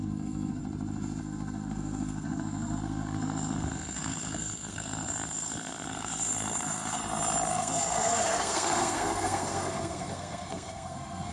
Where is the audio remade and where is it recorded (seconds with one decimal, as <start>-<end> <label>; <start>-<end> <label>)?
0.0-0.6 remade; 0.6-1.2 recorded; 1.2-7.0 remade; 7.0-7.5 recorded; 7.5-11.3 remade